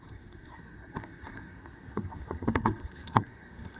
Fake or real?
fake